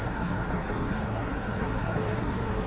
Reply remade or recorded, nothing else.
remade